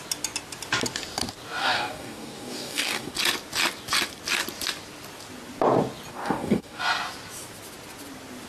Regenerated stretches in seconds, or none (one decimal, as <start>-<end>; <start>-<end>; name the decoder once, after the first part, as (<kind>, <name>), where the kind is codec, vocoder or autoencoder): 1.6-3.1 (codec, DAC); 6.1-6.8